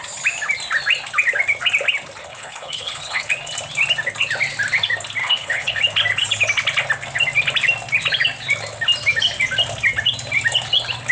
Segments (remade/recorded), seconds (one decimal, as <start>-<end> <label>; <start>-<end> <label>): 0.0-2.2 recorded; 2.2-3.3 remade; 3.3-5.2 recorded; 5.2-5.8 remade; 5.8-11.1 recorded